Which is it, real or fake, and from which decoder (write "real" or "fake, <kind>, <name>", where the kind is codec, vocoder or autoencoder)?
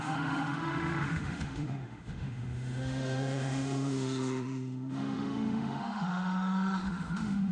fake, autoencoder, DAC-VAE